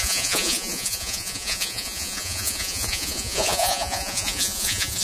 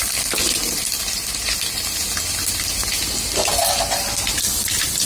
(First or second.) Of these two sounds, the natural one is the second